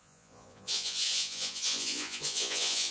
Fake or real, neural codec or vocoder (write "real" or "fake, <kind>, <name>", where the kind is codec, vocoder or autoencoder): fake, vocoder, Vocos